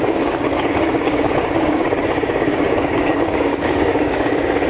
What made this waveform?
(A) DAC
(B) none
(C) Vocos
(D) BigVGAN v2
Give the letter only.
A